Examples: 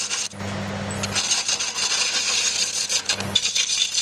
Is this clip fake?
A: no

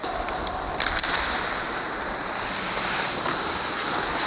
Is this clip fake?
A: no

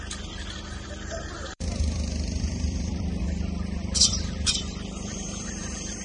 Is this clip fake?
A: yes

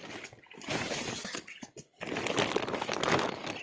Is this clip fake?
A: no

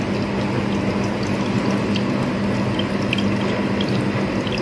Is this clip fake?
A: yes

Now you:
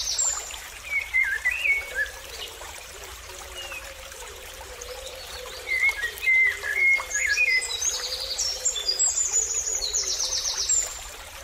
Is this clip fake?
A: yes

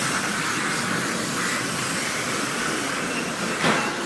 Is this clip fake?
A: no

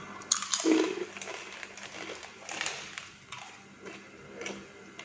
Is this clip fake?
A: no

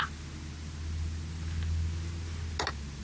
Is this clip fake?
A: no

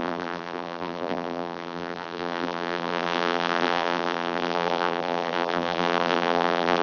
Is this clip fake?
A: yes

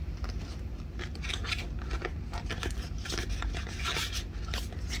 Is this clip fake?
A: no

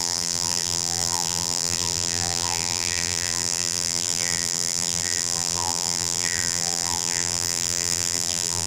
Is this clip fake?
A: yes